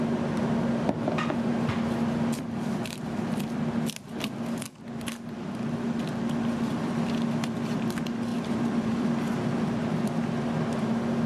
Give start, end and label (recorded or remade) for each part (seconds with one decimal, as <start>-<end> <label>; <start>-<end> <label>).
0.0-8.3 recorded; 8.3-9.1 remade; 9.1-11.3 recorded